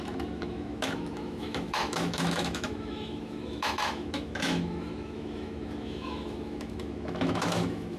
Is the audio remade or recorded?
remade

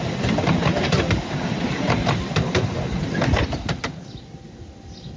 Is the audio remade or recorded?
recorded